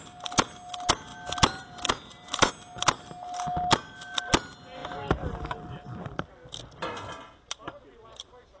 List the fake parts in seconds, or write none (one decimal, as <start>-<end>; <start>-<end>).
none